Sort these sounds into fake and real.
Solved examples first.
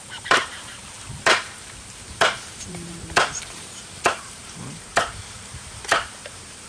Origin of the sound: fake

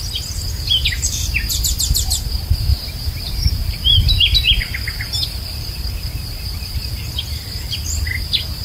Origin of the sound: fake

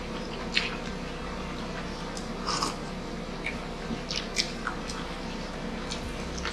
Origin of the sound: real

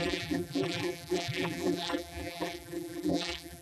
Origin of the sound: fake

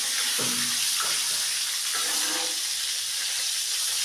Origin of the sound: real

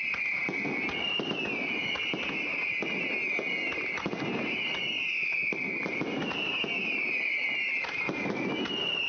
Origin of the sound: real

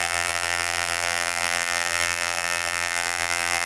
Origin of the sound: fake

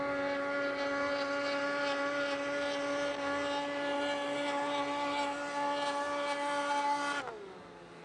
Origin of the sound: real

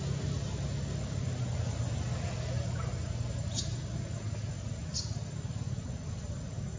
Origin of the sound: real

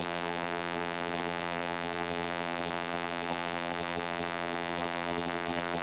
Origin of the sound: fake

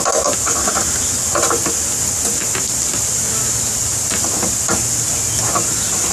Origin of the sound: real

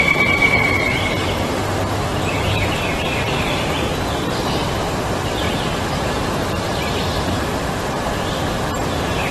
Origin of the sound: fake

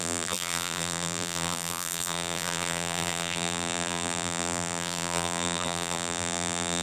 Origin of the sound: fake